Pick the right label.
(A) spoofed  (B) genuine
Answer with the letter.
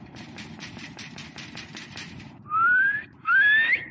A